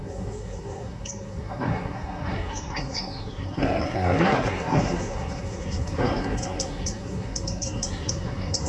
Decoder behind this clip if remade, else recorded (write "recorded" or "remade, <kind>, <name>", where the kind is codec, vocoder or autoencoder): remade, codec, SNAC